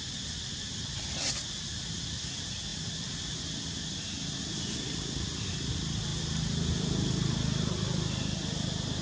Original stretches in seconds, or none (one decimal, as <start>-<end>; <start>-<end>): 0.0-9.0